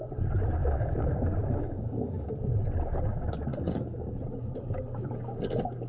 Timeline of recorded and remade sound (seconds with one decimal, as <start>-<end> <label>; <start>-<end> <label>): 0.0-0.6 recorded; 0.6-2.3 remade; 2.3-3.5 recorded; 3.5-4.2 remade; 4.2-5.9 recorded